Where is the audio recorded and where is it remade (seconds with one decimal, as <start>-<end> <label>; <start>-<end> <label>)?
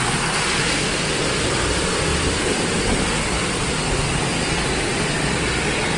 0.0-6.0 recorded